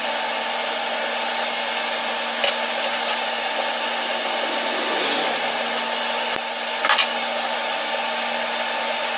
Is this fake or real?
real